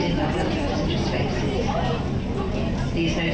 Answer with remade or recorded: recorded